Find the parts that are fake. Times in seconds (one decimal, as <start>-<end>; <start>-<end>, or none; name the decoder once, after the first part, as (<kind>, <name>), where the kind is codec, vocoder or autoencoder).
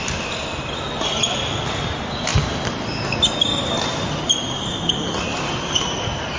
0.0-2.3 (vocoder, BigVGAN v2); 3.2-6.4